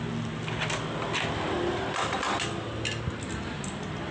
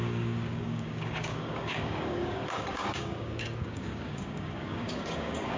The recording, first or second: first